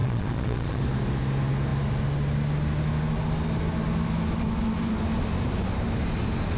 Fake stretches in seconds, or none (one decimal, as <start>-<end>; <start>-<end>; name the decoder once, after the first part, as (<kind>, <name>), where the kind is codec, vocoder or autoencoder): 0.0-0.8 (vocoder, Vocos)